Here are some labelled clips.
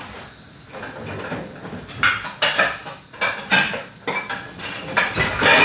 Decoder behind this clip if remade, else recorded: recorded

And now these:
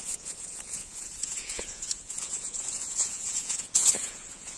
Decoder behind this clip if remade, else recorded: remade, vocoder, Vocos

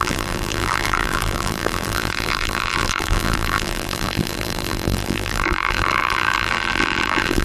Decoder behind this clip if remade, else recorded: remade, vocoder, BigVGAN v2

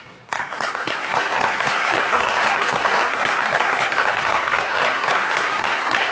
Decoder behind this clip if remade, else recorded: remade, codec, SNAC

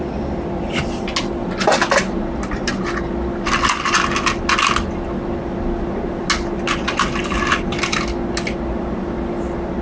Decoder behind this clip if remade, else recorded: recorded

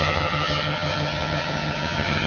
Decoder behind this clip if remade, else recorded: remade, vocoder, HiFi-GAN